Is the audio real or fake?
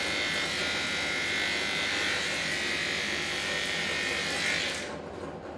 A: real